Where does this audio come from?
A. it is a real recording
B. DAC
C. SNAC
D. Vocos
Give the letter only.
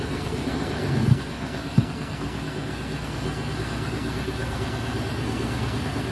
C